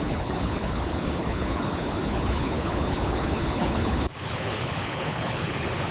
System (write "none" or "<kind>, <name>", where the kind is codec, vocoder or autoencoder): codec, HILCodec